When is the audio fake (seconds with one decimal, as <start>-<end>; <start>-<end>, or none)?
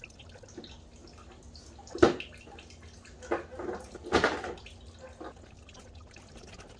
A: none